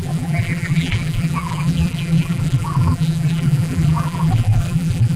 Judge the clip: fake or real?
fake